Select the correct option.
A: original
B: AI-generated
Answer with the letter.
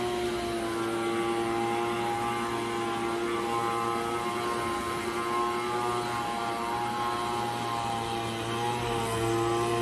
A